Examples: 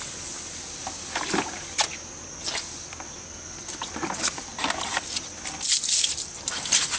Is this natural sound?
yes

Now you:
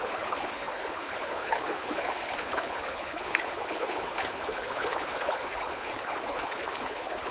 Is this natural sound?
no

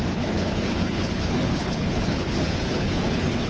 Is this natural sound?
no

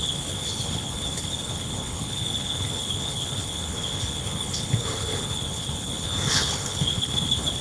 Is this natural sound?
no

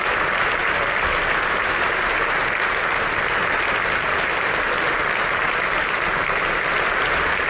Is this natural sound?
yes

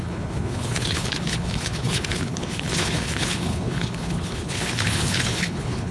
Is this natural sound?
no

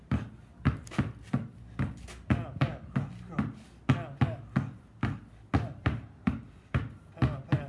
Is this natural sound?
yes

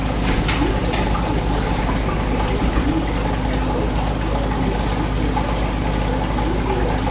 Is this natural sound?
yes